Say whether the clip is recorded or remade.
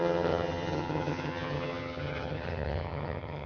remade